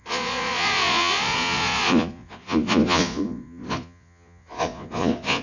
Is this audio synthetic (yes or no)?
yes